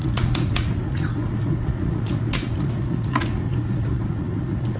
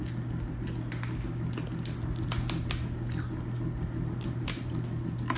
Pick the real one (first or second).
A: second